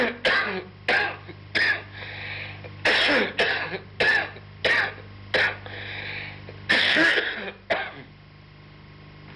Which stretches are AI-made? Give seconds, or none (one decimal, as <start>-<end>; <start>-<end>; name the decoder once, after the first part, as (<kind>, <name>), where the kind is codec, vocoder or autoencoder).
6.7-7.2 (codec, SNAC)